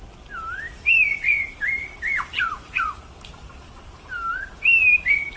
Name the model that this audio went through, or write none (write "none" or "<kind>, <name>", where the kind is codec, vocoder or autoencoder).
none